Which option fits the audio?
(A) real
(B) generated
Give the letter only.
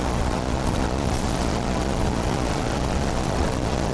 B